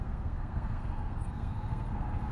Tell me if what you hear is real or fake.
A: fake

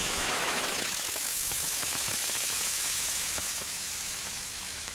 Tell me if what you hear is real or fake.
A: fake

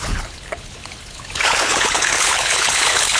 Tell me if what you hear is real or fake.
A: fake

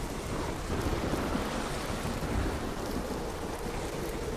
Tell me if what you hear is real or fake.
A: real